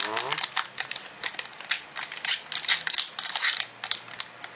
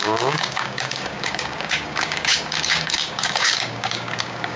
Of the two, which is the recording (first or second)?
first